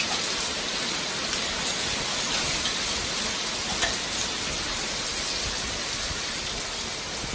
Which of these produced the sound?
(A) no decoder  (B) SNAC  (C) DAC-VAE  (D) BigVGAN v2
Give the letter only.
A